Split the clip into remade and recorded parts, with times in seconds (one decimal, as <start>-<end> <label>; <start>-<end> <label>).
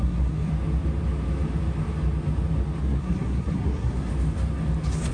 0.0-0.5 remade; 0.5-2.8 recorded; 2.8-4.1 remade; 4.1-5.1 recorded